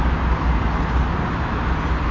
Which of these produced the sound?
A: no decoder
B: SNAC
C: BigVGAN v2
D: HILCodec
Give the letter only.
A